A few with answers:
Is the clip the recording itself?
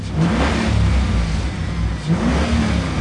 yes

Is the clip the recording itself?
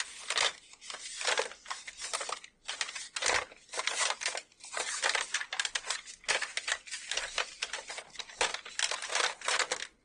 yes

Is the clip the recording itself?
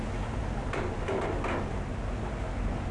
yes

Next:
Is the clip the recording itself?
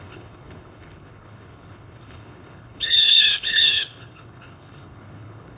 no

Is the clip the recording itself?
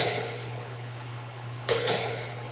no